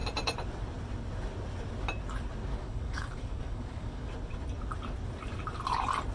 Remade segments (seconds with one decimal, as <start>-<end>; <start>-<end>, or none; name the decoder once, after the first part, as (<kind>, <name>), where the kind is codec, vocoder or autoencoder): 2.5-4.1 (codec, DAC)